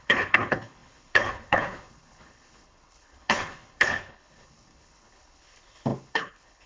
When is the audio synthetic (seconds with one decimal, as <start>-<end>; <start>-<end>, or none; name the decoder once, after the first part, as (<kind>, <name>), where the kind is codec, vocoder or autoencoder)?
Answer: 0.0-6.7 (codec, HILCodec)